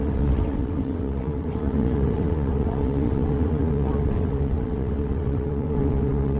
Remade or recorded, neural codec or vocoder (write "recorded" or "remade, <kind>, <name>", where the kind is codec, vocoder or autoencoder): remade, vocoder, WaveNeXt